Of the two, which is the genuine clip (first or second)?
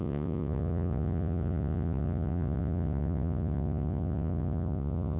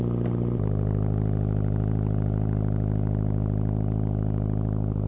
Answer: second